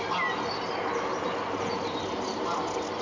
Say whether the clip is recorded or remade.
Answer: recorded